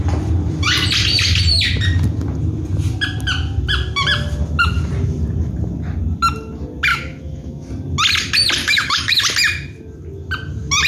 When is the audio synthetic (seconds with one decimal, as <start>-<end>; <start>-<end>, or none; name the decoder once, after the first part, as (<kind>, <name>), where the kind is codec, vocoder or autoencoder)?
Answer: 6.9-7.7 (autoencoder, DAC-VAE); 8.6-9.2